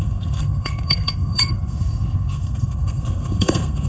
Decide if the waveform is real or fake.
fake